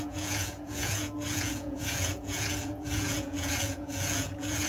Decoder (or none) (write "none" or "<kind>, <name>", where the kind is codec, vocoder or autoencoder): vocoder, Vocos